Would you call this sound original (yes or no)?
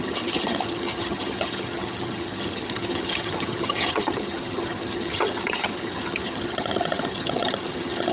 no